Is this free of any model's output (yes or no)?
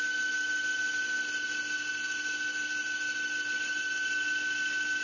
yes